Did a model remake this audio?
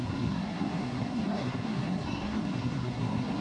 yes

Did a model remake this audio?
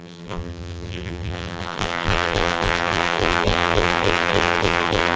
yes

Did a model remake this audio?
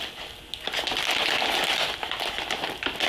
no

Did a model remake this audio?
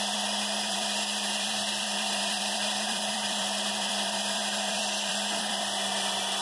yes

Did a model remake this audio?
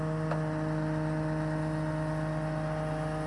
no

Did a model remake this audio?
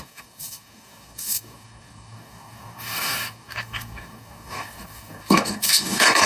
yes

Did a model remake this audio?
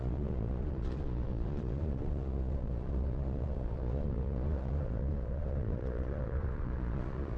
yes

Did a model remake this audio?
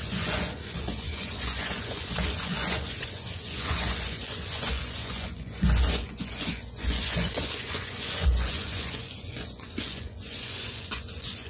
yes